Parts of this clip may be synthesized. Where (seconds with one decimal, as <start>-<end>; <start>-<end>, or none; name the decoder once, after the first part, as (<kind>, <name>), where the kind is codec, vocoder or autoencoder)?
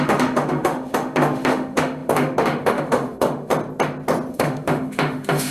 0.0-3.5 (autoencoder, DAC-VAE); 4.3-5.5